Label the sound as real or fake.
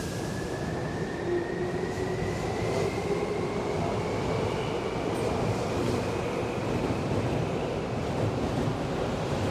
real